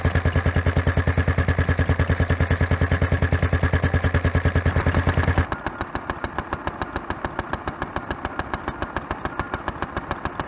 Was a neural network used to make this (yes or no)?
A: no